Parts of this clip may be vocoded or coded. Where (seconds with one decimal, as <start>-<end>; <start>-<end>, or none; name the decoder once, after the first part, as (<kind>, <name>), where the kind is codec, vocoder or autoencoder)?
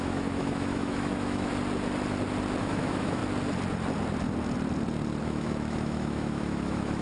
0.0-1.5 (autoencoder, DAC-VAE); 2.6-3.2; 5.2-7.0